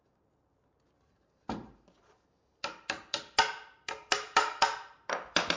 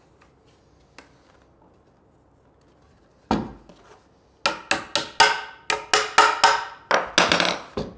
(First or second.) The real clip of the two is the second